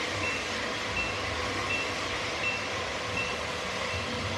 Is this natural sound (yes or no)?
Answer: yes